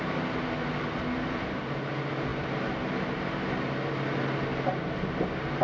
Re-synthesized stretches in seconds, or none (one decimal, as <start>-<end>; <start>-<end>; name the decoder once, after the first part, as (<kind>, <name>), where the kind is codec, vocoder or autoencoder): none